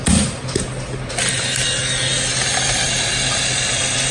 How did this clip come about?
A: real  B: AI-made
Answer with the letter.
A